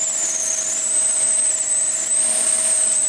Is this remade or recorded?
recorded